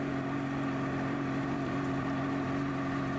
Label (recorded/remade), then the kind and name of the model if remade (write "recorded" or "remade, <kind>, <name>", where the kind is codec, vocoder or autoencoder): recorded